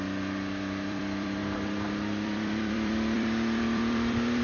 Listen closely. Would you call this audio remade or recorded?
remade